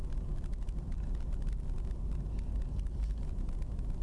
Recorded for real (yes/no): yes